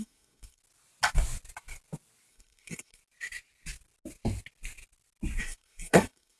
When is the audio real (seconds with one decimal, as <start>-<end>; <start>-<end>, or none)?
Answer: 0.6-2.3; 3.0-5.4